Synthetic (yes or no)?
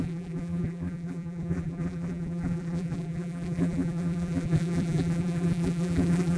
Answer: yes